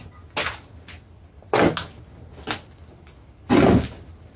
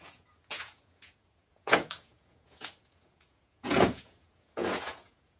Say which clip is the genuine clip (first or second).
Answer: first